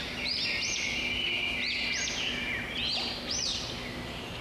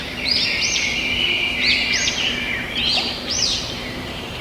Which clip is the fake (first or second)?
second